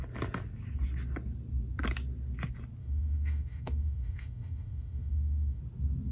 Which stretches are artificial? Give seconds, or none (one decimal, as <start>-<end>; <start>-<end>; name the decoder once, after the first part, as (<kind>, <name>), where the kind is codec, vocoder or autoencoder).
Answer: 2.8-5.6 (autoencoder, DAC-VAE)